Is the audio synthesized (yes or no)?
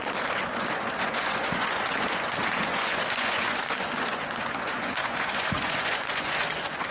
yes